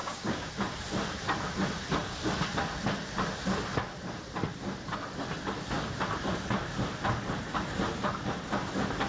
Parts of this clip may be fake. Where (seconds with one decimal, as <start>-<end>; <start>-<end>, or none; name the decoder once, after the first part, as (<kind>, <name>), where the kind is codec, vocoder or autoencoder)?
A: 0.0-0.5 (codec, DAC)